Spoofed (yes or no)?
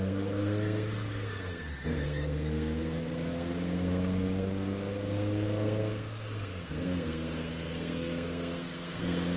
yes